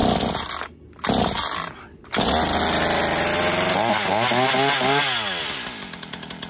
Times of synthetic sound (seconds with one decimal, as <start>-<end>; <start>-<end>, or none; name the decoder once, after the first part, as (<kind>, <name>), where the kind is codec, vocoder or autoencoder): none